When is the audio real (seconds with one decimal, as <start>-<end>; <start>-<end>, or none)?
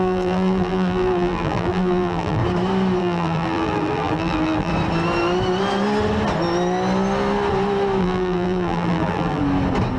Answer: 2.4-3.0; 4.7-8.0; 9.4-10.0